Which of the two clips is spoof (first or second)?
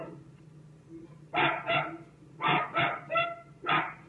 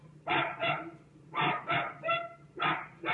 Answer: second